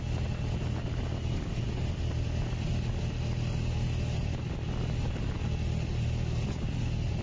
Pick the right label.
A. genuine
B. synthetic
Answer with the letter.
A